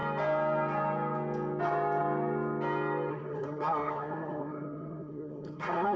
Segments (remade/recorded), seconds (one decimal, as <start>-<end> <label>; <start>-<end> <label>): 0.0-3.1 recorded; 3.1-6.0 remade